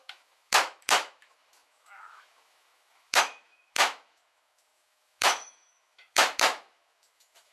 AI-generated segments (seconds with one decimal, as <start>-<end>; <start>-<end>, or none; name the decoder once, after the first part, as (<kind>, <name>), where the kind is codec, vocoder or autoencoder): 0.0-7.5 (autoencoder, DAC-VAE)